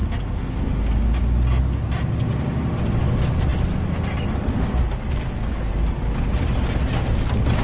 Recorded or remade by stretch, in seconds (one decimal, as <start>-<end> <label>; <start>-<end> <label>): 0.0-7.6 recorded